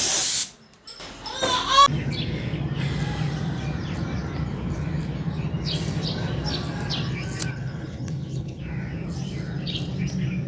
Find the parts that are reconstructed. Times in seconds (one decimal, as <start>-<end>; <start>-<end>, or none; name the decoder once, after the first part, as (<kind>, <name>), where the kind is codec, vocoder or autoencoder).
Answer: 7.5-8.6 (codec, HILCodec)